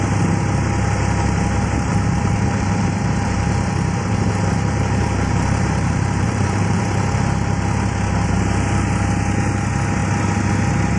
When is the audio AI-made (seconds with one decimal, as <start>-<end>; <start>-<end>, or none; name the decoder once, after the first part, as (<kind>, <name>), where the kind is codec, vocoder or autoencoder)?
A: 1.9-7.1 (vocoder, BigVGAN v2)

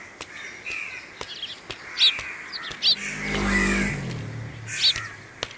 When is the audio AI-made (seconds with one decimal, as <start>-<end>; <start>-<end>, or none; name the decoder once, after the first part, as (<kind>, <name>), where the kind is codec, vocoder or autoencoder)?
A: none